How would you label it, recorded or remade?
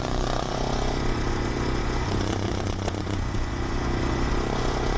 remade